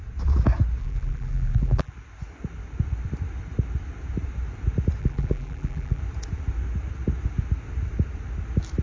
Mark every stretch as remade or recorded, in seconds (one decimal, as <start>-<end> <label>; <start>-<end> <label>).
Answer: 0.0-0.8 recorded; 0.8-1.9 remade; 1.9-5.0 recorded; 5.0-6.0 remade; 6.0-8.8 recorded